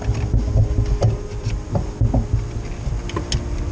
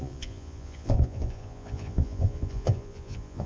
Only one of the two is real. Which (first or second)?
first